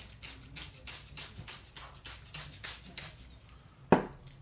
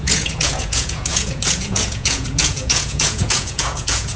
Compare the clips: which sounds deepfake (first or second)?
second